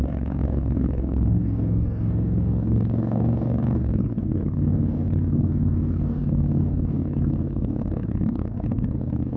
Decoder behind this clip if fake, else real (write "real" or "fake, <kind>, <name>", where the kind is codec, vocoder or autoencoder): fake, codec, DAC